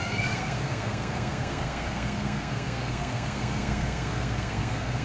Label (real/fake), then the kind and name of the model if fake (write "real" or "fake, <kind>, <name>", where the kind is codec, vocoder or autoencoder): fake, codec, SNAC